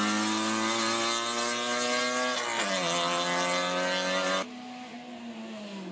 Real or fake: real